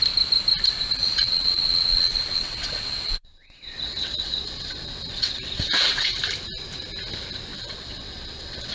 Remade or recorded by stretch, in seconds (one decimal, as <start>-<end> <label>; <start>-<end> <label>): 0.0-1.0 recorded; 1.0-6.2 remade; 6.2-7.5 recorded; 7.5-8.7 remade